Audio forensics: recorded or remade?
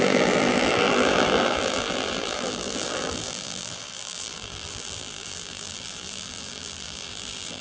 remade